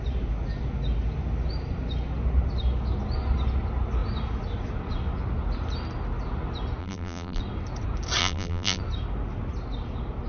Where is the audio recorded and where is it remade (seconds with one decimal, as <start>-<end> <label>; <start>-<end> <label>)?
0.0-6.8 recorded; 6.8-7.4 remade; 7.4-8.2 recorded; 8.2-8.8 remade; 8.8-10.3 recorded